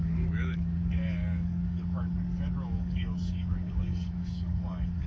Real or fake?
fake